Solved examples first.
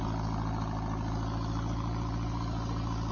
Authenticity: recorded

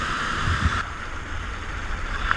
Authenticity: remade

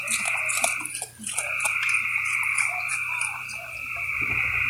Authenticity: remade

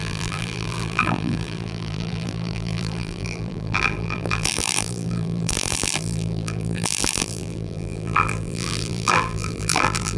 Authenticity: remade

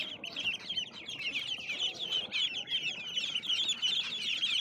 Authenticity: recorded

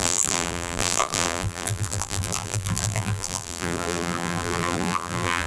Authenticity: remade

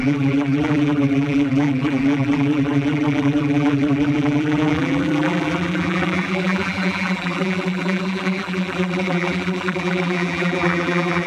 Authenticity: remade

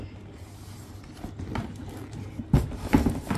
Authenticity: recorded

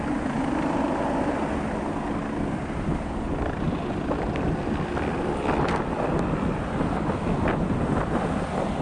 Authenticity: recorded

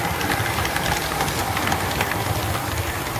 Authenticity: recorded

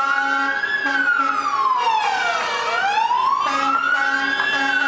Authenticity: recorded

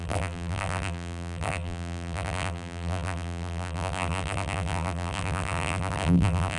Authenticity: remade